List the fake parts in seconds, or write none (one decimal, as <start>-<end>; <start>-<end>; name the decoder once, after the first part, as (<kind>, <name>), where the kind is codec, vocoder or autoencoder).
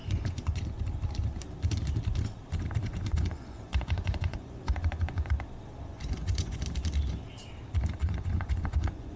0.0-0.6 (vocoder, Vocos); 2.8-5.3; 5.9-6.6; 8.0-9.2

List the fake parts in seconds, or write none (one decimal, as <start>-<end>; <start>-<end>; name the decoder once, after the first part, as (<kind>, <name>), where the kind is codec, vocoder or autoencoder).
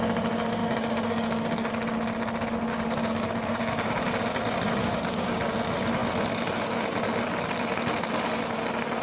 0.6-1.7 (codec, DAC); 2.7-4.1; 4.8-5.4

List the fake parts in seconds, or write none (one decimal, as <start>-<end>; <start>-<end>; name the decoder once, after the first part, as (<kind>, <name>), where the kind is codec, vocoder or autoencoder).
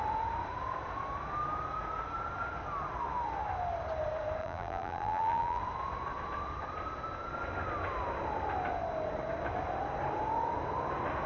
4.4-5.6 (vocoder, BigVGAN v2)